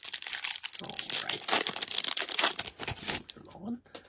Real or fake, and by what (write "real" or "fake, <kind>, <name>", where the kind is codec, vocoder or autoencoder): real